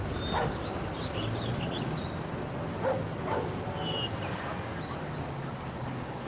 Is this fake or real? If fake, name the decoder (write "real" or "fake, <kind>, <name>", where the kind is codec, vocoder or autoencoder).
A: real